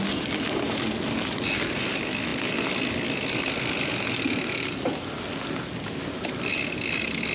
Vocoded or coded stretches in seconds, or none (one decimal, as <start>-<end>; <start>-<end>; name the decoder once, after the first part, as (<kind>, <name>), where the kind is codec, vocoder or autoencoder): none